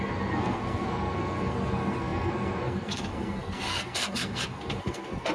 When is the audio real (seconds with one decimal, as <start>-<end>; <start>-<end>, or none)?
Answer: none